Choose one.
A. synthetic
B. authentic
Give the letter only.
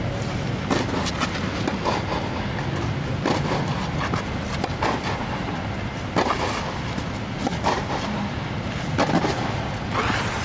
B